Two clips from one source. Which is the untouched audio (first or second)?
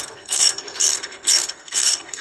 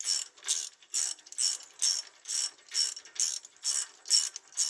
second